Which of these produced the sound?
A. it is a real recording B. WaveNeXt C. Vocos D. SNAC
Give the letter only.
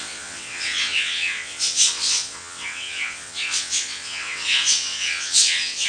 B